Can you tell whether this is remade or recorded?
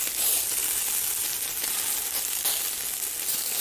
recorded